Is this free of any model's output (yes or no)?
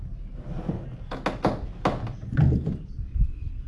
yes